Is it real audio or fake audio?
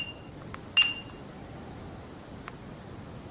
real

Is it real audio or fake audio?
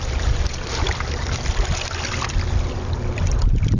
fake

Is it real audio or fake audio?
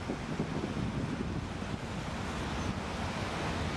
real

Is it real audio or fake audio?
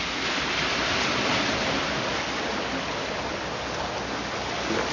real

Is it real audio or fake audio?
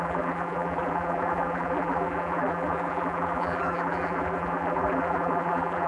fake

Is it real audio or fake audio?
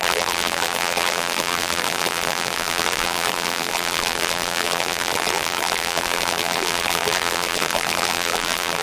fake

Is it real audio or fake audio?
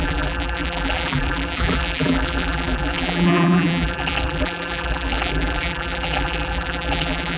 fake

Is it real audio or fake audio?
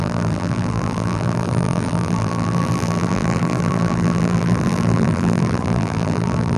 fake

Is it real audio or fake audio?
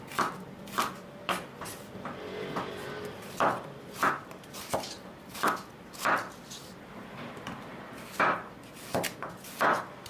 fake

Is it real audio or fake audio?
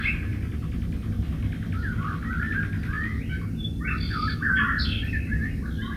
real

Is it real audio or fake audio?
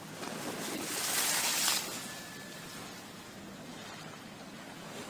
real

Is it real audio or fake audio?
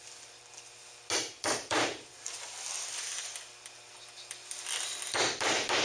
real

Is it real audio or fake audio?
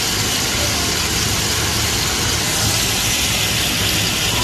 real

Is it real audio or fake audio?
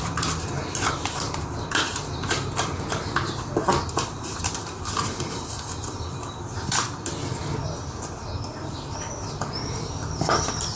fake